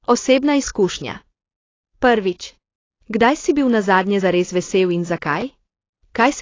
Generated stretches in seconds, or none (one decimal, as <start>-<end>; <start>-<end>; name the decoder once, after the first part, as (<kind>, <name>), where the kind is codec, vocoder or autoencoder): 0.7-1.2 (codec, DAC); 1.9-2.5